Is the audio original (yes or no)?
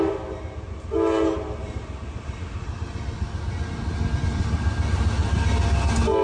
yes